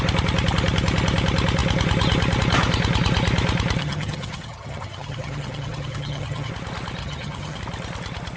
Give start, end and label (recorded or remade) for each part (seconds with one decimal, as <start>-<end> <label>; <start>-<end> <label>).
0.0-3.8 recorded; 3.8-6.5 remade; 6.5-7.0 recorded; 7.0-7.6 remade; 7.6-8.4 recorded

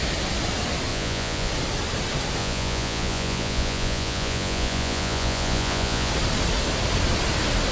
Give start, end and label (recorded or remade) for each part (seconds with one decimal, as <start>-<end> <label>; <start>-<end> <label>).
0.0-0.9 recorded; 0.9-1.5 remade; 1.5-2.4 recorded; 2.4-6.1 remade; 6.1-7.7 recorded

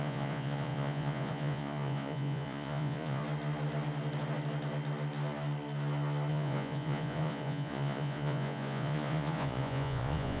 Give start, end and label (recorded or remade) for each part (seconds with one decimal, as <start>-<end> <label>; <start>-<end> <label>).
0.0-3.2 remade; 3.2-6.3 recorded; 6.3-10.4 remade

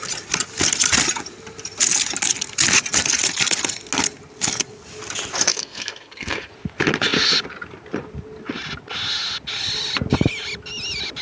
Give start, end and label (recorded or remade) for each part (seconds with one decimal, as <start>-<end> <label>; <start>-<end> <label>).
0.0-5.5 recorded; 5.5-6.5 remade; 6.5-11.2 recorded

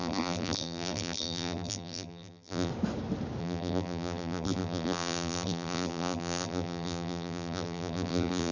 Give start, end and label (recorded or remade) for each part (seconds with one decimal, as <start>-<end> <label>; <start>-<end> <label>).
0.0-2.7 remade; 2.7-3.4 recorded; 3.4-8.5 remade

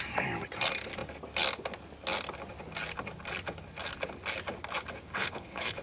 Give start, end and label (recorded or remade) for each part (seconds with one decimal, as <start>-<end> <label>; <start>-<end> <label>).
0.0-5.1 recorded; 5.1-5.8 remade

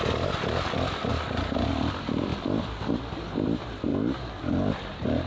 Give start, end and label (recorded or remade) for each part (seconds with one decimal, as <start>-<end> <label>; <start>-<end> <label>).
0.0-1.1 remade; 1.1-1.7 recorded; 1.7-3.9 remade; 3.9-4.7 recorded; 4.7-5.3 remade